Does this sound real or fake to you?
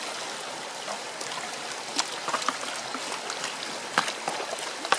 real